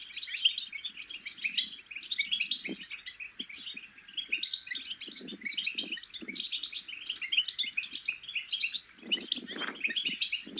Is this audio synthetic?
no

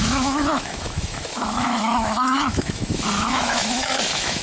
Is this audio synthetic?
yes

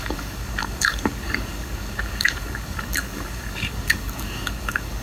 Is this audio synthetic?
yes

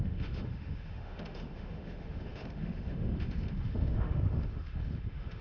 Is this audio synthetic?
yes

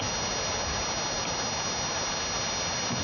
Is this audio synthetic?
no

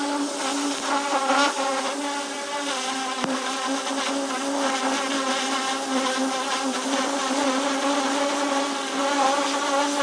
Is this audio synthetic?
no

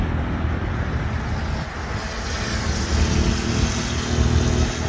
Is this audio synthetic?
no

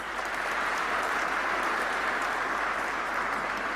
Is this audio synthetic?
yes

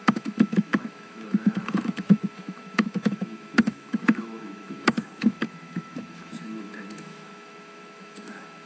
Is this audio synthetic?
yes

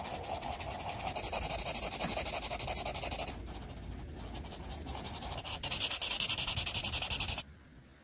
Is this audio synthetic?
no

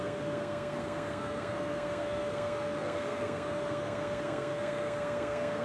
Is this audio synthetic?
yes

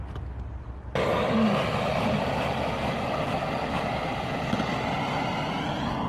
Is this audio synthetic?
no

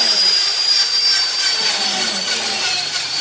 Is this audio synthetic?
yes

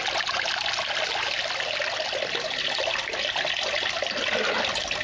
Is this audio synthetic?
no